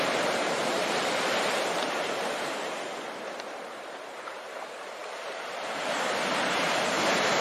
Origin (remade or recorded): remade